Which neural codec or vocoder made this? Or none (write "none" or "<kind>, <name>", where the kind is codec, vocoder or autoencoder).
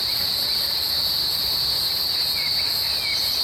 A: vocoder, BigVGAN v2